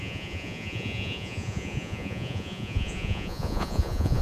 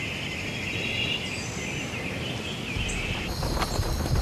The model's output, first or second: first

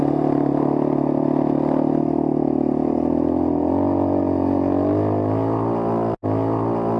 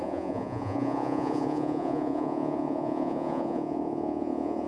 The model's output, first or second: second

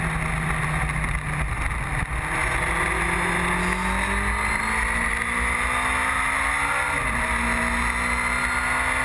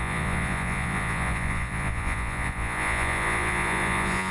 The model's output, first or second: second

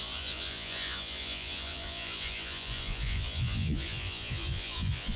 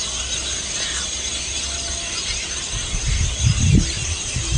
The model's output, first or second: first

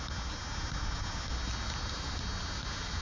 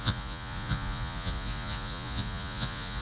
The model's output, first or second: second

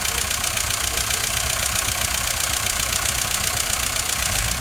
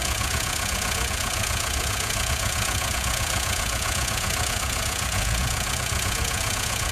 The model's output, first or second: second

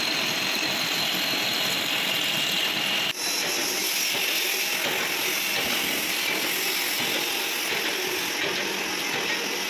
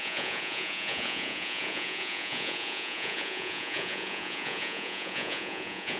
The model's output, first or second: second